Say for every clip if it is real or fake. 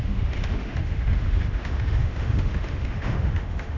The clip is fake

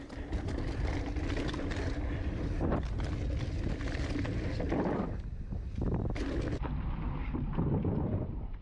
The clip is real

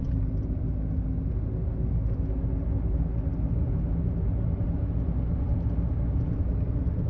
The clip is real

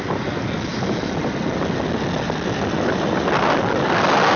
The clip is real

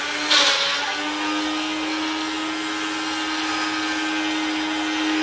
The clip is real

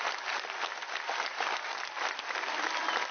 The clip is real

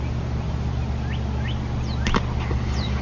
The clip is real